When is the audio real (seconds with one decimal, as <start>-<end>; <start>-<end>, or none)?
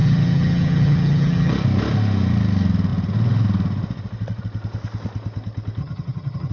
1.5-5.8